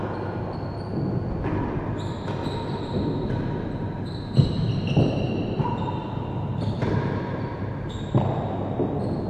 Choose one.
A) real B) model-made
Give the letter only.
A